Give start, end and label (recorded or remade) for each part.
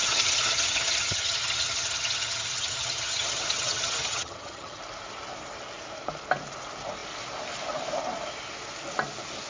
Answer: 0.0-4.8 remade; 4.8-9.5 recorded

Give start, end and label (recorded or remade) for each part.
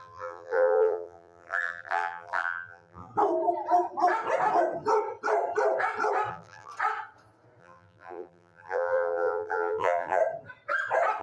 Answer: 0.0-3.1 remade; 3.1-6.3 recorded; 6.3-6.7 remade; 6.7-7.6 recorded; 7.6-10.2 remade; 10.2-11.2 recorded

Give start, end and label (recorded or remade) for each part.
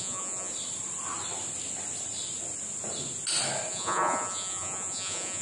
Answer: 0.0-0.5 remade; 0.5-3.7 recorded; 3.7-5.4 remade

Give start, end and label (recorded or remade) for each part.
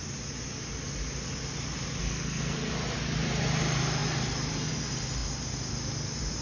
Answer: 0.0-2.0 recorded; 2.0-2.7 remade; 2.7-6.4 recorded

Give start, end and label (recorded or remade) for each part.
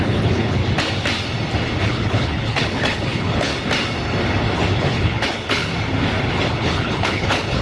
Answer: 0.0-0.6 remade; 0.6-1.8 recorded; 1.8-3.5 remade; 3.5-4.7 recorded; 4.7-5.7 remade; 5.7-6.5 recorded; 6.5-7.6 remade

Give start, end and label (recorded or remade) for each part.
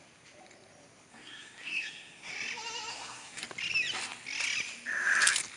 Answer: 0.0-1.1 recorded; 1.1-2.3 remade; 2.3-2.9 recorded; 2.9-3.4 remade; 3.4-5.6 recorded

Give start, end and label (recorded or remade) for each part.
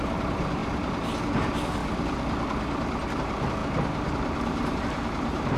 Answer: 0.0-0.6 remade; 0.6-1.2 recorded; 1.2-1.8 remade; 1.8-3.2 recorded; 3.2-5.6 remade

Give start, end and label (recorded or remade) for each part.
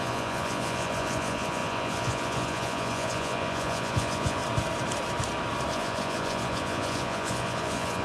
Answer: 0.0-4.4 remade; 4.4-5.7 recorded; 5.7-8.0 remade